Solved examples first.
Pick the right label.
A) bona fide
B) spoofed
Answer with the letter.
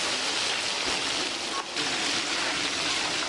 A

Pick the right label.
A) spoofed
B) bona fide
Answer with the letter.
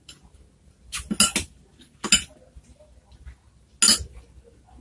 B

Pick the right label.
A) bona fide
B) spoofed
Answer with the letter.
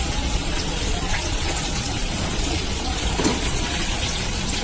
B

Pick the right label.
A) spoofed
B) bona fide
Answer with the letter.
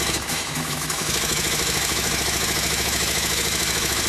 A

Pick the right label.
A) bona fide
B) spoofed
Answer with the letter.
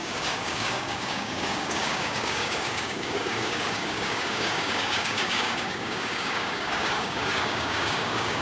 B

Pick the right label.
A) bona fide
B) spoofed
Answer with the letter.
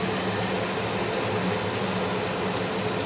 A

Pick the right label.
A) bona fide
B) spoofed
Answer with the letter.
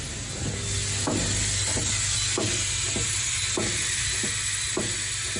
A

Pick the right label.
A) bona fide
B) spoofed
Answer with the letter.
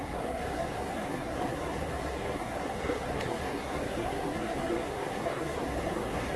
B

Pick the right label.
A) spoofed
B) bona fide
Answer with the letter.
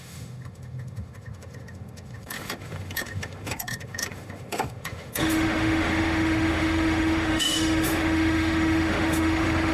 A